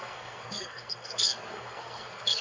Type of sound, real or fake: fake